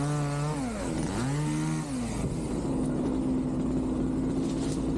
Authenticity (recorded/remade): recorded